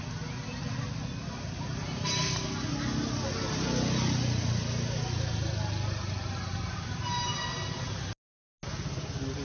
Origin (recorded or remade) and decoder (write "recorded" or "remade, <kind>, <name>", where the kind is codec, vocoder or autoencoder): recorded